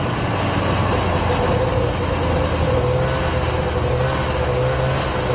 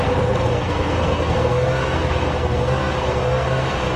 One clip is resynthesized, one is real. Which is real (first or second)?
first